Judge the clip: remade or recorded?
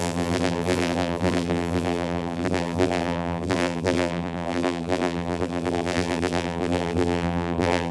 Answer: remade